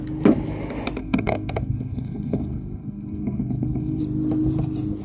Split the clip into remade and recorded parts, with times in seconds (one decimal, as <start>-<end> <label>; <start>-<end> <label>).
0.0-1.0 recorded; 1.0-4.0 remade; 4.0-5.0 recorded